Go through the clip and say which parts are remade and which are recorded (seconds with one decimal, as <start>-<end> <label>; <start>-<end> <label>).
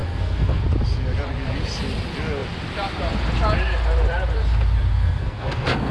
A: 0.0-0.6 remade; 0.6-4.9 recorded; 4.9-5.9 remade